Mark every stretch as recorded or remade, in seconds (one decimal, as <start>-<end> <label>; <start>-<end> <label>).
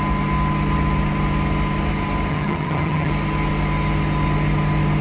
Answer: 0.0-2.3 recorded; 2.3-3.1 remade; 3.1-5.0 recorded